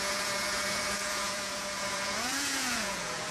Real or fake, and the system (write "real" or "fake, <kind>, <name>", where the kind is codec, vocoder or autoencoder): fake, vocoder, Vocos